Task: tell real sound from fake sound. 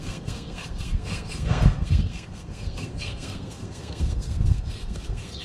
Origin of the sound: fake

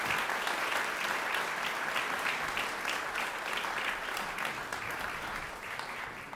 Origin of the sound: fake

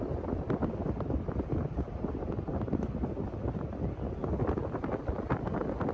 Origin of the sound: real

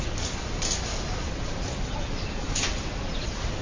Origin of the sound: real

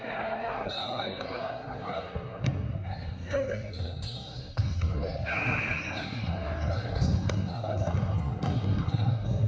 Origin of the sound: fake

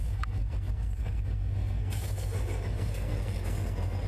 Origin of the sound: fake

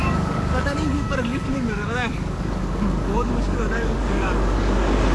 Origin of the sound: fake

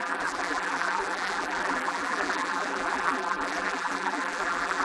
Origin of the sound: fake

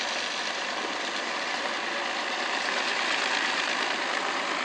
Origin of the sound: real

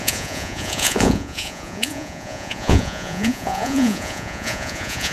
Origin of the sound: fake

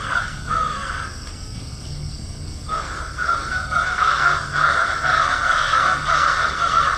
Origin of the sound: fake